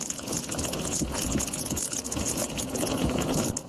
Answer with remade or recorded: remade